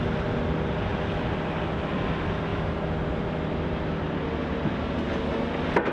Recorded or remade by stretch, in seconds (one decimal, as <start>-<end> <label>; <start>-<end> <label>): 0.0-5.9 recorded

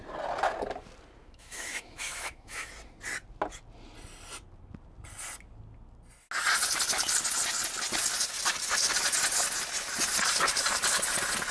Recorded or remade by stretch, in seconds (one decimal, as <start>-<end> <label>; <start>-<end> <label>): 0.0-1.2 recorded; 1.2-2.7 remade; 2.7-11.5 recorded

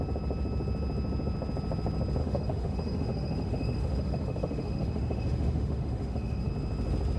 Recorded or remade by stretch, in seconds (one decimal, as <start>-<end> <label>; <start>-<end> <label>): 0.0-2.2 recorded; 2.2-6.5 remade; 6.5-7.2 recorded

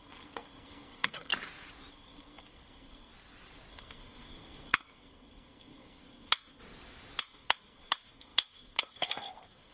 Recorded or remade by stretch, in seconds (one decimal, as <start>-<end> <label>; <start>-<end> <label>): 0.0-1.3 remade; 1.3-1.9 recorded; 1.9-3.1 remade; 3.1-3.7 recorded; 3.7-6.6 remade; 6.6-7.2 recorded; 7.2-9.7 remade

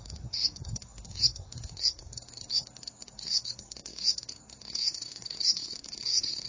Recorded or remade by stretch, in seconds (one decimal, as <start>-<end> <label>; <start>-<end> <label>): 0.0-6.5 remade

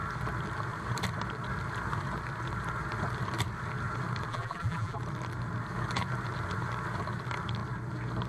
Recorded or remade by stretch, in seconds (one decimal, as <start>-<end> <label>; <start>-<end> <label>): 0.0-4.3 recorded; 4.3-5.0 remade; 5.0-8.3 recorded

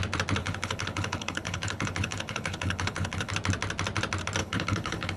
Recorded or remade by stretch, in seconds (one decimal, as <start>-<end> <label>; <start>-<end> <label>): 0.0-0.4 recorded; 0.4-3.3 remade; 3.3-4.4 recorded; 4.4-5.2 remade